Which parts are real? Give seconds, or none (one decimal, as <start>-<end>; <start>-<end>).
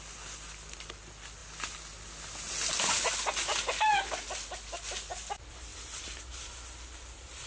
0.0-7.5